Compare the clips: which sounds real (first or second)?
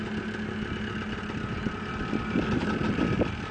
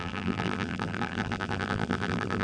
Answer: first